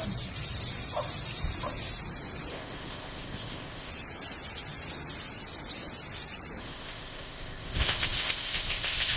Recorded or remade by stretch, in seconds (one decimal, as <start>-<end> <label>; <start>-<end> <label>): 0.0-2.5 recorded; 2.5-3.9 remade; 3.9-6.6 recorded; 6.6-9.2 remade

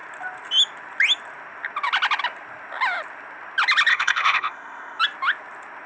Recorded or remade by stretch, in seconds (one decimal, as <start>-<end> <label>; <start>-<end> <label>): 0.0-3.9 recorded; 3.9-5.0 remade; 5.0-5.9 recorded

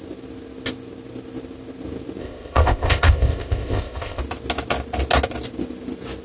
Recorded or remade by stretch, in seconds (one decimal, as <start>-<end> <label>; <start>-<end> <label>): 0.0-2.2 recorded; 2.2-4.2 remade; 4.2-6.2 recorded

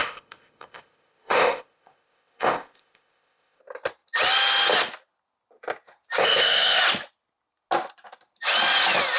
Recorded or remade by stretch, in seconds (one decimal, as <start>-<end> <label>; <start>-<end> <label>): 0.0-3.6 remade; 3.6-6.2 recorded; 6.2-6.8 remade; 6.8-9.2 recorded